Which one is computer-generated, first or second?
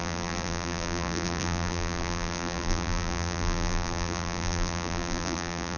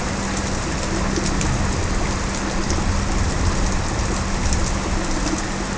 first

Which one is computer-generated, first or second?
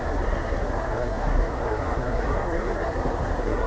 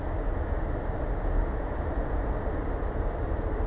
first